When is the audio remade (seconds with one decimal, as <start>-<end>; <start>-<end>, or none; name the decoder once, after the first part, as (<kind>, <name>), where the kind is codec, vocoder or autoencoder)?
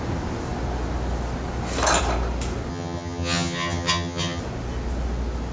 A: 2.7-4.4 (vocoder, HiFi-GAN)